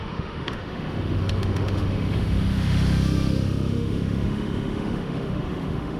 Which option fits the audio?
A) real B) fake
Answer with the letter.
B